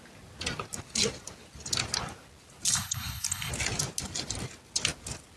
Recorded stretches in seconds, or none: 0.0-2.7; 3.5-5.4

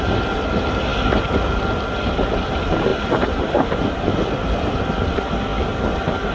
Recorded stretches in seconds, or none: 0.0-6.3

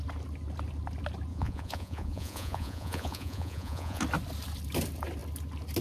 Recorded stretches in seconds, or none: 0.0-1.3; 4.0-5.8